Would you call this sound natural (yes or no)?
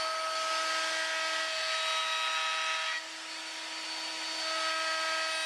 yes